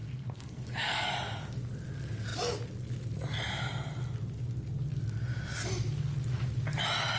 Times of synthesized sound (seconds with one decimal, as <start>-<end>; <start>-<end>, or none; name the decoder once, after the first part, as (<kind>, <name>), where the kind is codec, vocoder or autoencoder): 0.0-1.1 (codec, SNAC)